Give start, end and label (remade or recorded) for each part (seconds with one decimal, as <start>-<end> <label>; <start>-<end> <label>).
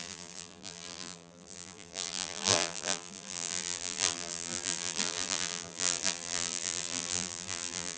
0.0-8.0 remade